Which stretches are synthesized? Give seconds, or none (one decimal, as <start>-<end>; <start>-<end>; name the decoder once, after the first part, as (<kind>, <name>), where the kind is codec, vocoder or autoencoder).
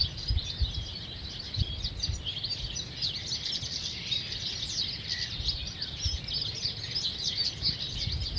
none